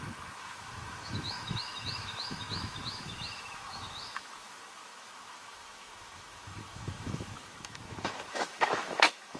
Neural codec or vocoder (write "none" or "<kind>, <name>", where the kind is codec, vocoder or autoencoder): autoencoder, DAC-VAE